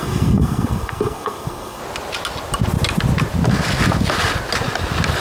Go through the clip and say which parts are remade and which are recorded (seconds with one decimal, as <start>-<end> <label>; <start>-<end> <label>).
0.0-1.8 remade; 1.8-5.2 recorded